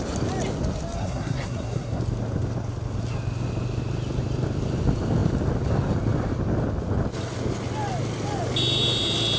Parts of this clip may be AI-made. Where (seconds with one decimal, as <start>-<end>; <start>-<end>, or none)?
1.0-2.0